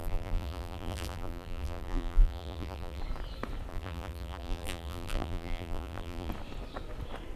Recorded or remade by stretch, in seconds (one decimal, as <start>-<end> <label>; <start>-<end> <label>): 0.0-3.0 remade; 3.0-3.7 recorded; 3.7-6.3 remade; 6.3-7.4 recorded